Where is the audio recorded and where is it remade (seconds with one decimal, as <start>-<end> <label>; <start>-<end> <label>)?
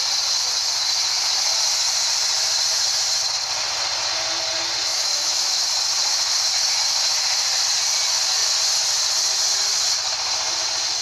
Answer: 0.0-4.9 recorded; 4.9-5.6 remade; 5.6-11.0 recorded